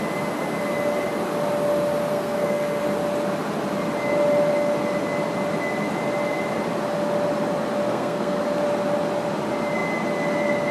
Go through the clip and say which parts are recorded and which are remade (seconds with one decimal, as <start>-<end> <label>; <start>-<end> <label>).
0.0-2.1 recorded; 2.1-2.8 remade; 2.8-7.9 recorded; 7.9-8.4 remade; 8.4-10.7 recorded